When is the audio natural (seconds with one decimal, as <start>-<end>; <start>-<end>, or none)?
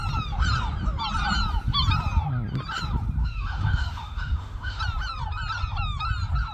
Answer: 0.0-3.2; 4.8-6.5